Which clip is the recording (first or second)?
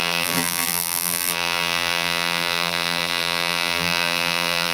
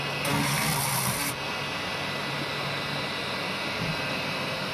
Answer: second